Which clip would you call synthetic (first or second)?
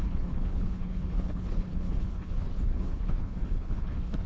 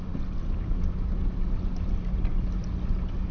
first